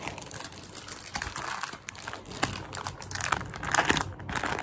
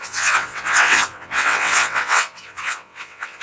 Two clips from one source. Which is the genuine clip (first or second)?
first